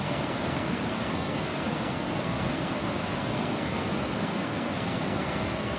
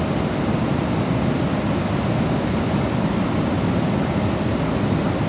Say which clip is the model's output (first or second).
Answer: first